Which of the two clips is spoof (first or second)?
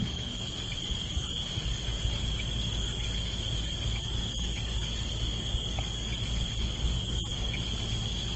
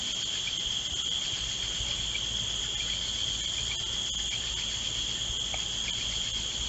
first